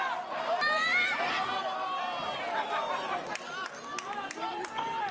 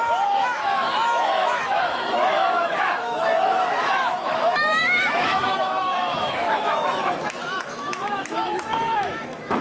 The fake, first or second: second